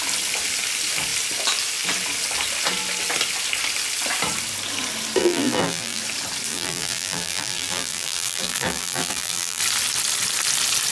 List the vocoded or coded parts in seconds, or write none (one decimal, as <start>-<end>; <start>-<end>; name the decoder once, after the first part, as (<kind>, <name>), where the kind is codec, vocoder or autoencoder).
5.2-6.0 (vocoder, BigVGAN v2); 6.5-9.6